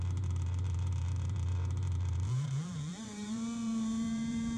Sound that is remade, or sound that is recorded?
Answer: remade